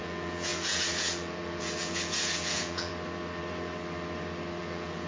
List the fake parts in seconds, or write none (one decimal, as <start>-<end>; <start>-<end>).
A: 0.0-2.9; 4.6-5.1